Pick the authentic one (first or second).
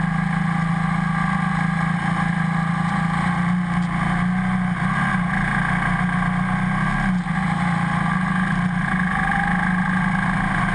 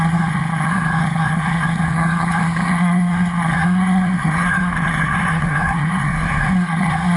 first